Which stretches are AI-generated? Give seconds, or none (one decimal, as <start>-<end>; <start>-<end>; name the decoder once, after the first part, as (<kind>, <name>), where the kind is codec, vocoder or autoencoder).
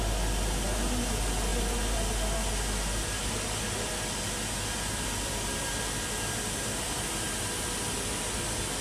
none